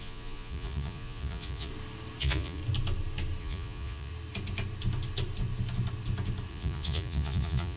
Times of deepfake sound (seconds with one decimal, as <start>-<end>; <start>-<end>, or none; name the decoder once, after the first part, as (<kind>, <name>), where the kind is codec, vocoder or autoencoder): 0.0-1.7 (vocoder, Vocos); 2.2-2.6; 3.4-4.1; 6.5-7.8